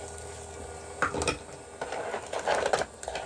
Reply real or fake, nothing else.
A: real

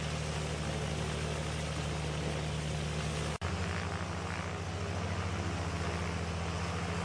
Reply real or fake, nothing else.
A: real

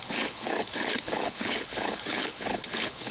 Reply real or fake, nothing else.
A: fake